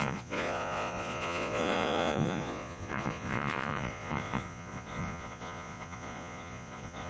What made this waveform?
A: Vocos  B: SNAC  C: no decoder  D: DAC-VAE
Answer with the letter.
A